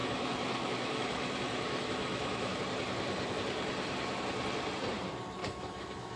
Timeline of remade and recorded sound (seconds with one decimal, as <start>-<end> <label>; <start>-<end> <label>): 0.0-2.6 remade; 2.6-5.4 recorded; 5.4-6.2 remade